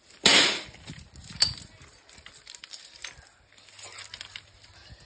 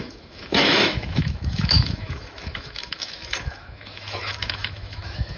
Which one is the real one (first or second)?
first